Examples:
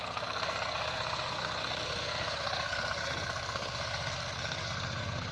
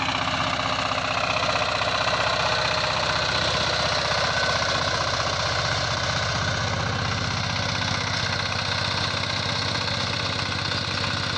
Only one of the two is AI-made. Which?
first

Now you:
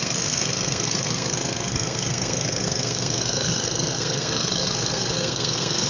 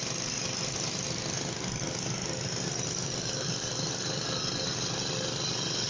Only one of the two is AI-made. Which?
first